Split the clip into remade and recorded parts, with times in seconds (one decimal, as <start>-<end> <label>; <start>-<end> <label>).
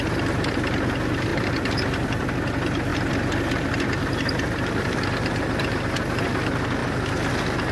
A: 0.0-1.3 recorded; 1.3-2.3 remade; 2.3-2.9 recorded; 2.9-5.7 remade; 5.7-6.8 recorded; 6.8-7.3 remade; 7.3-7.7 recorded